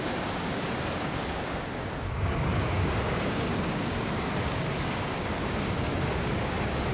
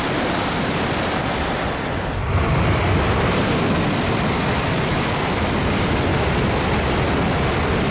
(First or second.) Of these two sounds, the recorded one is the second